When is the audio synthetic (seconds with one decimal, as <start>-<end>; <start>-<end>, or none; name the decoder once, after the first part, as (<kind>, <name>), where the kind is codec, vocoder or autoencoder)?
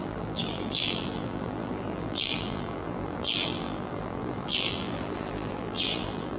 0.0-6.4 (vocoder, BigVGAN v2)